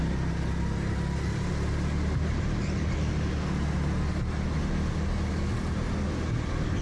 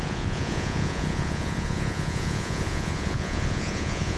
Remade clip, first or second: second